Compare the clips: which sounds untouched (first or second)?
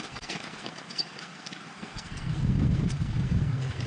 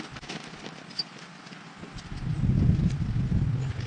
second